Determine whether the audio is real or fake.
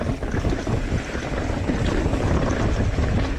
real